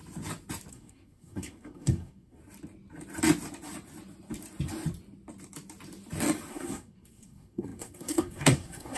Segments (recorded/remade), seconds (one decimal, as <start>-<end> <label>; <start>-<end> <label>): 0.0-0.7 recorded; 0.7-2.4 remade; 2.4-6.5 recorded; 6.5-9.0 remade